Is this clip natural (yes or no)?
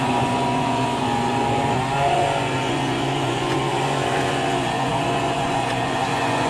no